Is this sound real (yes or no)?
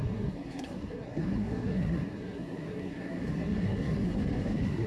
no